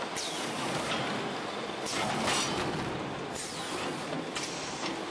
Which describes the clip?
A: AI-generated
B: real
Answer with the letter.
B